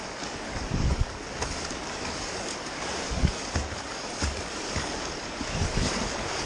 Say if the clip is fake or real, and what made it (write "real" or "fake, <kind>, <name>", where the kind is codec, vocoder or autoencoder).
fake, codec, DAC